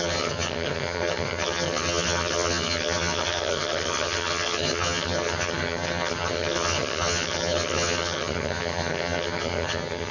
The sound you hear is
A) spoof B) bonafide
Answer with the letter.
A